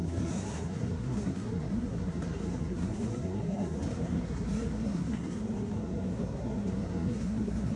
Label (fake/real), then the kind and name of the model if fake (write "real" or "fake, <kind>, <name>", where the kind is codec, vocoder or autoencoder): fake, codec, SNAC